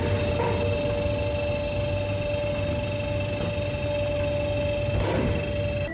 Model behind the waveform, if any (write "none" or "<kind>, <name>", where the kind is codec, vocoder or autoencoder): none